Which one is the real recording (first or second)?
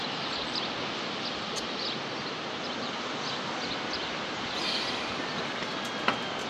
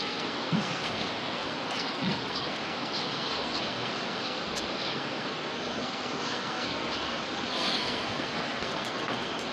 first